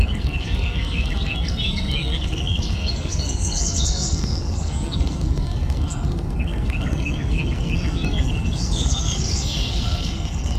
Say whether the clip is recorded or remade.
remade